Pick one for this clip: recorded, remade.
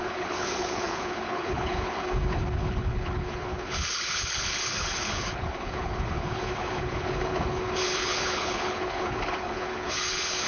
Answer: remade